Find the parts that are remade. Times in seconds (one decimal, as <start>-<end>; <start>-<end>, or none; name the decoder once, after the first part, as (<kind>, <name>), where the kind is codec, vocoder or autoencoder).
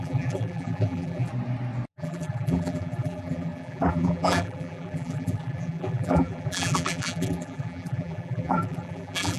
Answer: 0.0-1.3 (vocoder, BigVGAN v2); 1.9-9.4